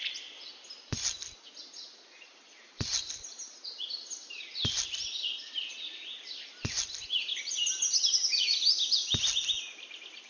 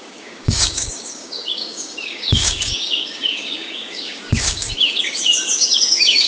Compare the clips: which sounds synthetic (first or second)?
second